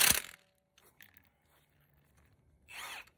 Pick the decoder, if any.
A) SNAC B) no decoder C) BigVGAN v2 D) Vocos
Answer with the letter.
B